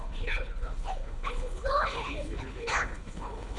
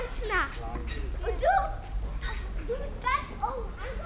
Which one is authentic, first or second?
second